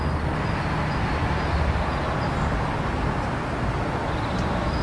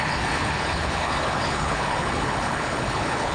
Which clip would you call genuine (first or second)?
first